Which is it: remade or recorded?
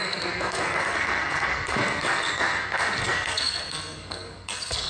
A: remade